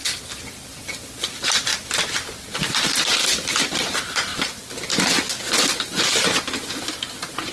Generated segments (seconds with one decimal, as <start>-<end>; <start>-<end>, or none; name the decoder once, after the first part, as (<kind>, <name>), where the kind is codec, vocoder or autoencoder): none